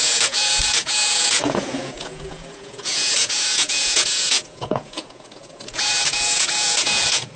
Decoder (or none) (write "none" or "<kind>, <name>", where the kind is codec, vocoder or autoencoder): vocoder, Vocos